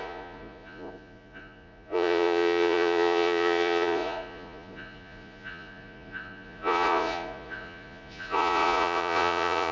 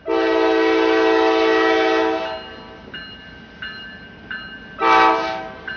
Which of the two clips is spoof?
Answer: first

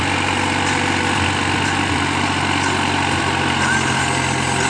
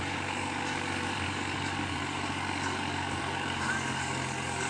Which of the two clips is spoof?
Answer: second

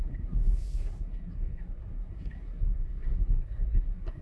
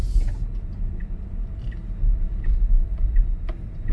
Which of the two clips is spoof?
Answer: first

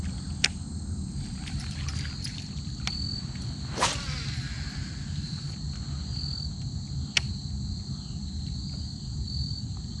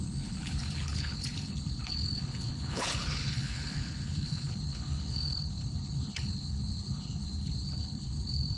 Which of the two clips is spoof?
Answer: second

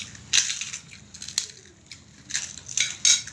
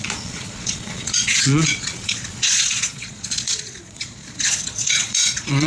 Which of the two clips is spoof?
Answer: second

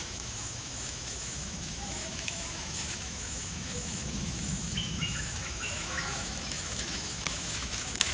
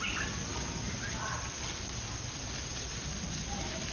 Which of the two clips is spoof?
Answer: first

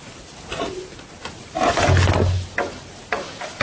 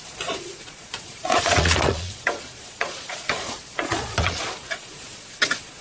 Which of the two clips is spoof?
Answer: second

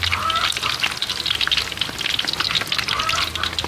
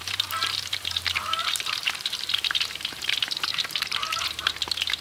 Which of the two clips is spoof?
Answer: second